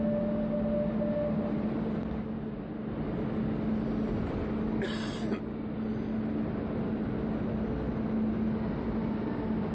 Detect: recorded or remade recorded